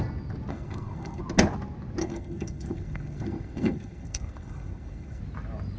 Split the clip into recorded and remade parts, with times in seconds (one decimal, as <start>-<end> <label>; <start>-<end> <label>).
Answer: 0.0-0.5 recorded; 0.5-1.2 remade; 1.2-2.0 recorded; 2.0-5.2 remade; 5.2-5.8 recorded